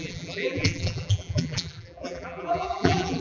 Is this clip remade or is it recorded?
remade